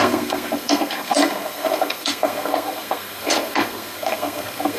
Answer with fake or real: fake